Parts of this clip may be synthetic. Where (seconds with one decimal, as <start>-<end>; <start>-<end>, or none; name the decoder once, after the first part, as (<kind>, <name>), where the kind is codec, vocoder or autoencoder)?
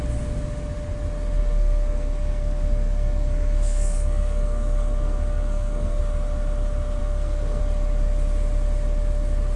1.4-6.0 (codec, SNAC); 7.0-7.6